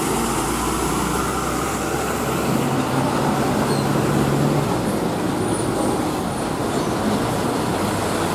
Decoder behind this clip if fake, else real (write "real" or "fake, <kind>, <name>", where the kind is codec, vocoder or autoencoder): real